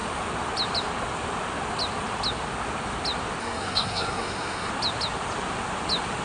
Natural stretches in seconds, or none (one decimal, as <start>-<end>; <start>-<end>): 0.0-3.4; 4.7-6.2

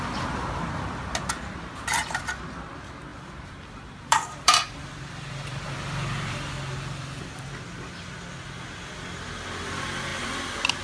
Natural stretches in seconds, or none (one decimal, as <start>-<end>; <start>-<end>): 0.0-3.1; 5.7-10.8

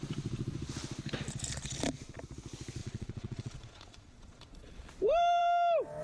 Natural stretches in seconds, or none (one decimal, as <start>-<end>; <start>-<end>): 0.0-2.8; 4.9-6.0

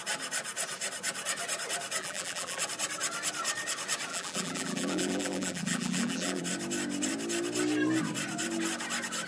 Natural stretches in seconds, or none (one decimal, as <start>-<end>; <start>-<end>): 0.0-2.0; 2.6-4.1; 6.4-9.3